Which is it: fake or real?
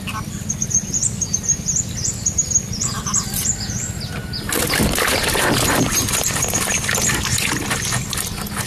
real